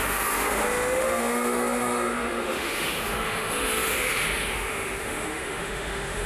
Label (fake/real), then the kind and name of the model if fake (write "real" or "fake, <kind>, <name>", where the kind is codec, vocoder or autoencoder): fake, autoencoder, DAC-VAE